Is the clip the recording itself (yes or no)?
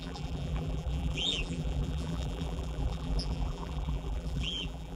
no